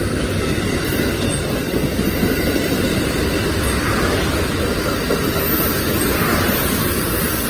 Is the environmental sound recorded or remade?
recorded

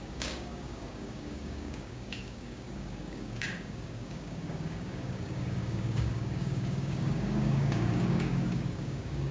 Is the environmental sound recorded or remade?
remade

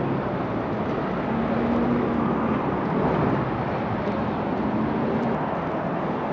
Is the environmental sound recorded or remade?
recorded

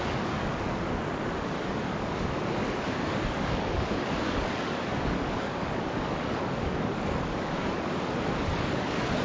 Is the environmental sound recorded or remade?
remade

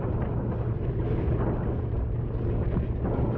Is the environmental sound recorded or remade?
recorded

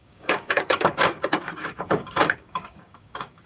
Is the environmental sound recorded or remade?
remade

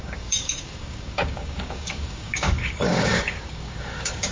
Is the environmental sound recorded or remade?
remade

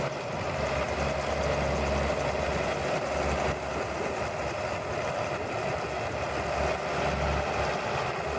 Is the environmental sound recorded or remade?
recorded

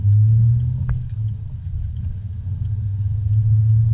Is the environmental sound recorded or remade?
remade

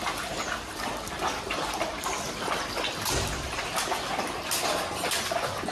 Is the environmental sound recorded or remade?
recorded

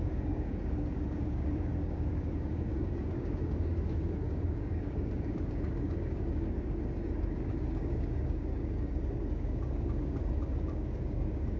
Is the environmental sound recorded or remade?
remade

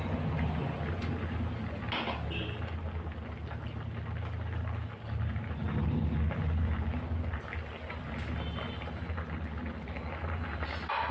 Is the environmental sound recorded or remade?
recorded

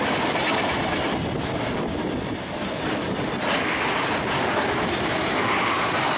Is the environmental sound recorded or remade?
recorded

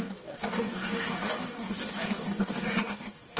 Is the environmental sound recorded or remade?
remade